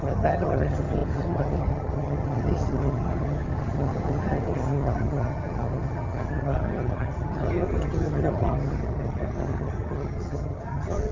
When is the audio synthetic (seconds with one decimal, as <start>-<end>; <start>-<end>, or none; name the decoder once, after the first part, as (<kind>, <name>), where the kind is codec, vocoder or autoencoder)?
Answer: 0.0-11.1 (vocoder, HiFi-GAN)